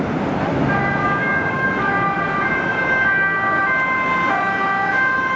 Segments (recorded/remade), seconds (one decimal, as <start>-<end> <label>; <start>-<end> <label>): 0.0-1.0 recorded; 1.0-1.7 remade; 1.7-2.7 recorded; 2.7-3.6 remade; 3.6-5.4 recorded